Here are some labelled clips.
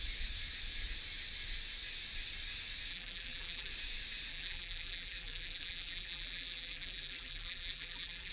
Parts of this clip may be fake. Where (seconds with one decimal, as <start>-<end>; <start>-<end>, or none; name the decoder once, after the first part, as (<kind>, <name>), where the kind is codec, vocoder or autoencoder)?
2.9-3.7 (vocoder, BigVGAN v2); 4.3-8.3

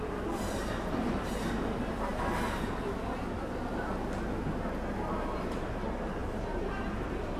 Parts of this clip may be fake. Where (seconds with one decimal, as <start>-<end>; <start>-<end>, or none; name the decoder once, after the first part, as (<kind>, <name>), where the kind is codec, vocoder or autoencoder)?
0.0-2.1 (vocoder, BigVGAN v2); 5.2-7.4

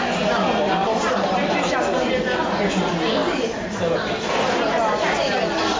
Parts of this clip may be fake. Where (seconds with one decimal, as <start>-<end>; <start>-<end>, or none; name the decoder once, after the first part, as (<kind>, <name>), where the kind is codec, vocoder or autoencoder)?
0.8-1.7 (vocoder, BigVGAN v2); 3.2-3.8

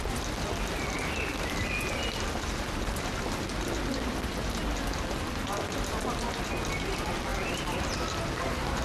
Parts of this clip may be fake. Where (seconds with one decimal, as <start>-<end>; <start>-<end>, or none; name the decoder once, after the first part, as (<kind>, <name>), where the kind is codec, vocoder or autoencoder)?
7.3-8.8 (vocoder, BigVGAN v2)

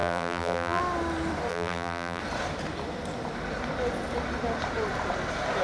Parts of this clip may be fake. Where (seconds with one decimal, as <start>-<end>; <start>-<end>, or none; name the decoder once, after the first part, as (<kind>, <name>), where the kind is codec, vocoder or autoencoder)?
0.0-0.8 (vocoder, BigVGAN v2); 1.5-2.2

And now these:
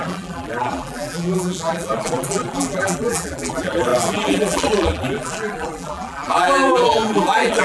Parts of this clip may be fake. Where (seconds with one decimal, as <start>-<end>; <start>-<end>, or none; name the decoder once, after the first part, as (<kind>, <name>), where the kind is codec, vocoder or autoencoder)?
0.0-7.6 (vocoder, BigVGAN v2)

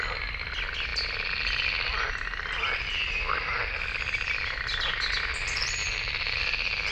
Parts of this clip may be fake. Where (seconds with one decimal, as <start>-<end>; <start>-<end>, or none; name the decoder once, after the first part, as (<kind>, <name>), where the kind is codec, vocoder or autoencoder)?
5.8-6.4 (vocoder, BigVGAN v2)

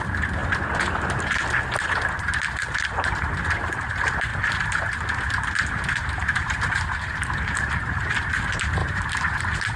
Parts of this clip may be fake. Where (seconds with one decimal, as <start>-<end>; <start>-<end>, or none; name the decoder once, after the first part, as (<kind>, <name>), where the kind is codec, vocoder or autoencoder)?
6.2-8.0 (vocoder, BigVGAN v2); 8.8-9.4